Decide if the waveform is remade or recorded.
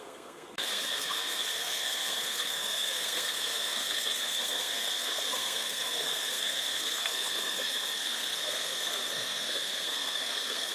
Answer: remade